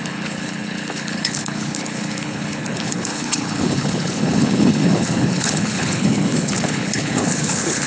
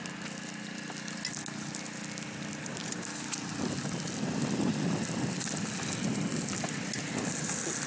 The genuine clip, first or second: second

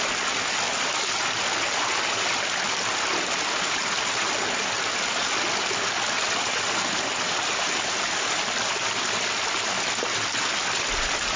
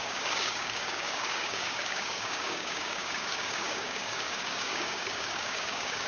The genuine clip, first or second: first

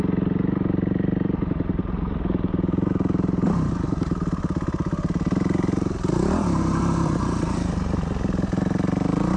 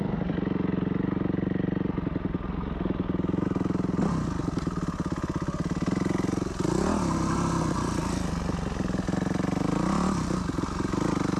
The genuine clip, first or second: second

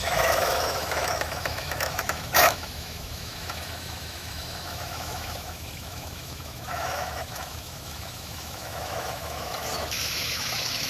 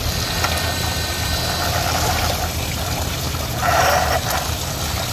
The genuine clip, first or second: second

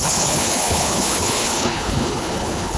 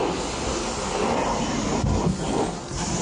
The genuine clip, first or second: second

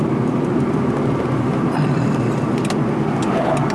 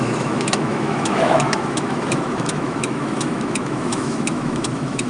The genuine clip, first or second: first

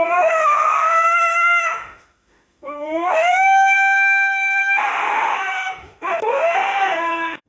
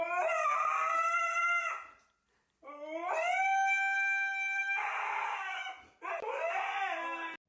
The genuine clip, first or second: second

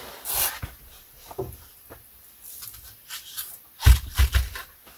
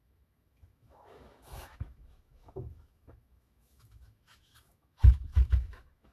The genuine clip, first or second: first